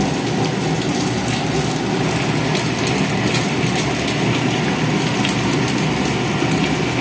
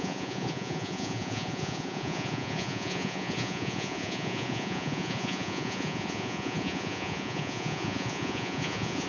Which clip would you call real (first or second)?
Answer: first